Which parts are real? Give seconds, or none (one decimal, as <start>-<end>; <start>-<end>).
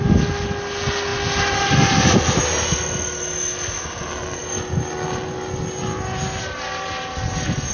0.0-7.7